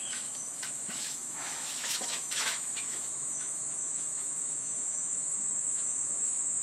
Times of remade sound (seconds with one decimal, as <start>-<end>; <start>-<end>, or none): 0.0-6.6